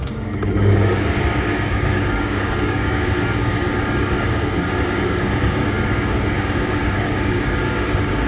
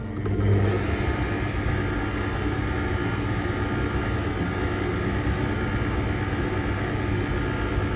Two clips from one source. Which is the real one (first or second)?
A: second